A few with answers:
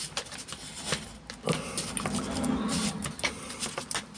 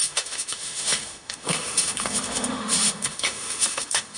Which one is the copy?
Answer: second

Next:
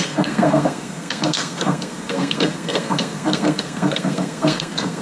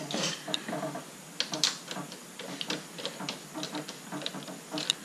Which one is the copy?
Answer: first